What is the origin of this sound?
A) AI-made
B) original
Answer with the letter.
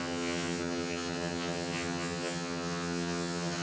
A